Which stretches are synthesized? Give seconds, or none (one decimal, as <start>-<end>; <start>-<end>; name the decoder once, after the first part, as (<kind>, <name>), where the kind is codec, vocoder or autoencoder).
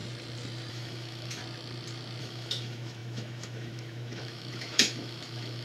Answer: 0.7-1.4 (autoencoder, DAC-VAE); 2.2-5.6